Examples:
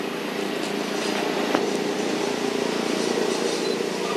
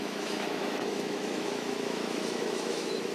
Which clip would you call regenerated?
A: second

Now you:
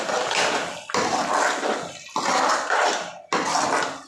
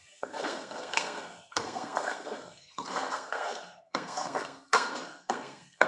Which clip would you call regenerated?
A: second